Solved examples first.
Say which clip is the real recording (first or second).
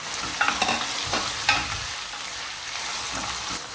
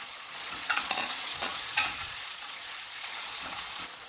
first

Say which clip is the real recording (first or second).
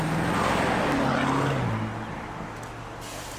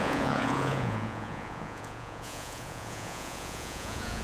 first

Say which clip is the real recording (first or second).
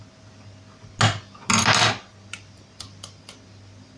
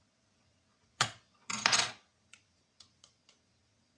first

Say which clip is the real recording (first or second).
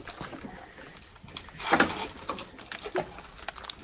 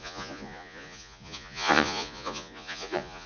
first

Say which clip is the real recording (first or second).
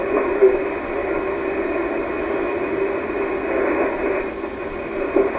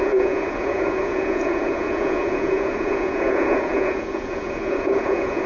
first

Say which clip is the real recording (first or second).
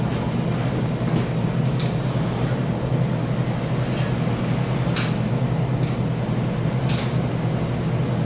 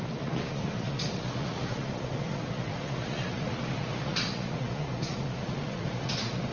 first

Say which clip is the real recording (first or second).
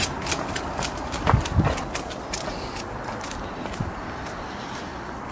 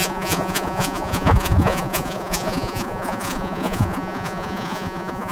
first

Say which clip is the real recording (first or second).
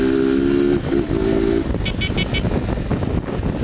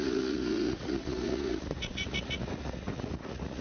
first